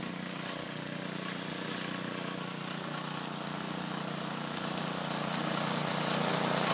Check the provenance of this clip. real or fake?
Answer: real